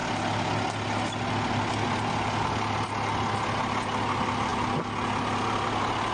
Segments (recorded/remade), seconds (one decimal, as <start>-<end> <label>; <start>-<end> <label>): 0.0-6.1 recorded